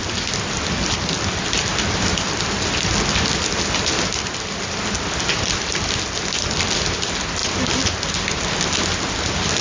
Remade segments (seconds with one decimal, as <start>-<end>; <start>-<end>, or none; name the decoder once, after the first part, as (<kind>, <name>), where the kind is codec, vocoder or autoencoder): none